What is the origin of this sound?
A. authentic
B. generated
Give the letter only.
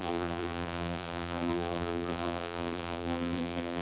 B